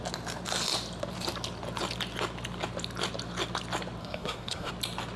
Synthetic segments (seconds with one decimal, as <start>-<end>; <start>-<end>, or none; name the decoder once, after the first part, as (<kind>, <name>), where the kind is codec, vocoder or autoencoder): 4.0-4.7 (codec, SNAC)